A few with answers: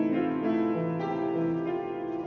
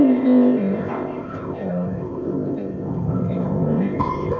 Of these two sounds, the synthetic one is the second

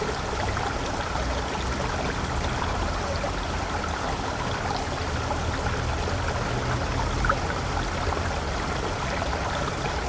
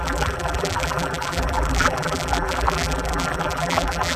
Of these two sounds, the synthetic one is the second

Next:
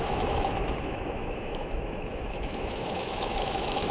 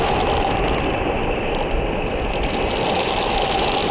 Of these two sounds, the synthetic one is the first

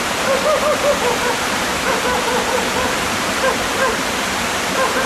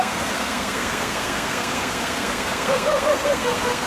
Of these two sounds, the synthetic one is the second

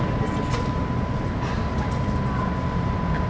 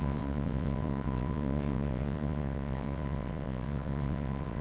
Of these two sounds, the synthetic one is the second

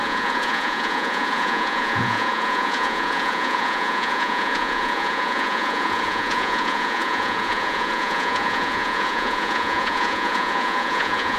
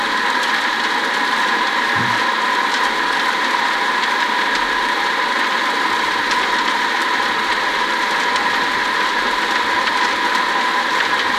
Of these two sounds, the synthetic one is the first